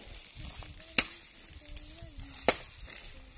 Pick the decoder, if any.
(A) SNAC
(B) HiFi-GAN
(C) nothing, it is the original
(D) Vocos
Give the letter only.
C